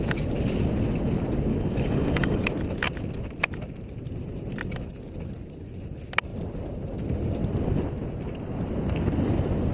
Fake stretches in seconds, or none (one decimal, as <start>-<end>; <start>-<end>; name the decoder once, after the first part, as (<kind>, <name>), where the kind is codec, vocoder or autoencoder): 1.5-2.4 (codec, DAC)